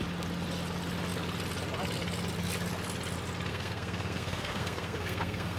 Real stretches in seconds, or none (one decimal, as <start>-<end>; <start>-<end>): 0.0-3.5